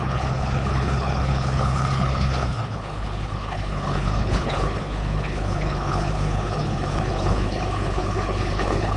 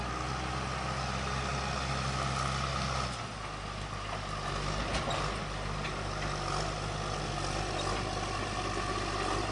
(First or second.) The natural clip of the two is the second